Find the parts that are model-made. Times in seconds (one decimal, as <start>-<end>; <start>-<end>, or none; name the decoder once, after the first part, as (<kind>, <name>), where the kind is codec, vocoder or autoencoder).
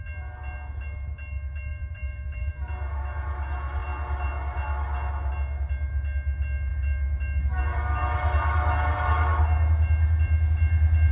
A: 1.7-2.5 (vocoder, BigVGAN v2)